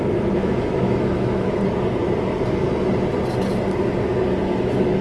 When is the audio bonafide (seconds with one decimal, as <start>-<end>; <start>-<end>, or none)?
1.6-4.6